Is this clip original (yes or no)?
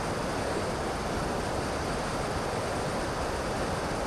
yes